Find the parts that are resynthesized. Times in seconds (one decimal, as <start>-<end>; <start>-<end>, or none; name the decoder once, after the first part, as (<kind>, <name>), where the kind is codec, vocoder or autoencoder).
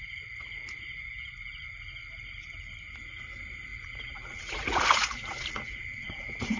3.7-6.6 (vocoder, Vocos)